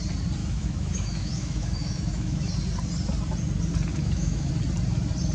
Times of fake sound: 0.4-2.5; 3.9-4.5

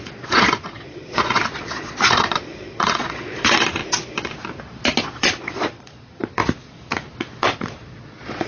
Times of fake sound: 0.0-3.8; 5.0-6.4; 7.6-8.5

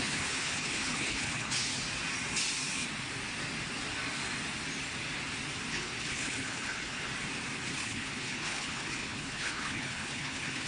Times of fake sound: 0.0-1.7; 5.7-7.1; 7.7-10.7